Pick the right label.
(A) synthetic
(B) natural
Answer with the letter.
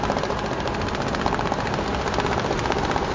B